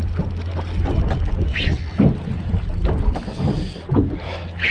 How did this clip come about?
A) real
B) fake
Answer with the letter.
A